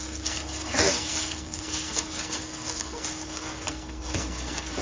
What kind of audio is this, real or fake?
fake